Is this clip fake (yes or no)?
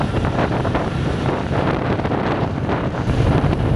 yes